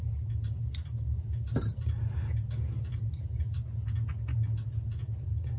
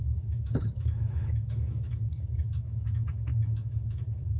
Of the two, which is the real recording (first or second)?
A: first